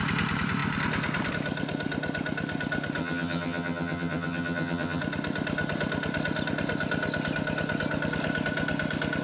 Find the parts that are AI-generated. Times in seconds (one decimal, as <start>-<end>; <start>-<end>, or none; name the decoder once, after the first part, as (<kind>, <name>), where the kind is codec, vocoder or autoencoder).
3.0-5.0 (vocoder, HiFi-GAN)